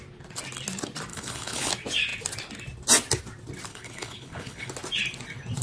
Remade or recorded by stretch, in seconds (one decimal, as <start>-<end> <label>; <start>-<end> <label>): 0.0-1.1 recorded; 1.1-1.7 remade; 1.7-3.7 recorded; 3.7-4.7 remade; 4.7-5.6 recorded